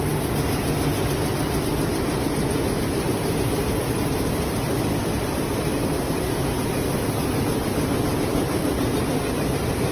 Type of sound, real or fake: real